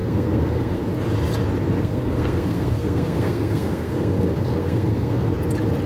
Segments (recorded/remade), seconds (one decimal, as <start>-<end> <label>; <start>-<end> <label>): 0.0-0.8 remade; 0.8-1.8 recorded; 1.8-5.3 remade; 5.3-5.9 recorded